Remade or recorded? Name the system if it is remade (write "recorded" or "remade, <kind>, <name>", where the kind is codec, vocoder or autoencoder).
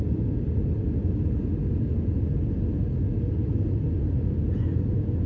recorded